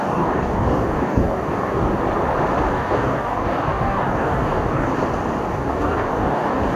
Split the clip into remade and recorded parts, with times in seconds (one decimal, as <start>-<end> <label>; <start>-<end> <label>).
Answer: 0.0-1.9 remade; 1.9-2.7 recorded; 2.7-4.9 remade; 4.9-5.5 recorded; 5.5-6.8 remade